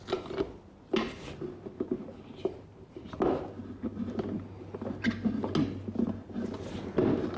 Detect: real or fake real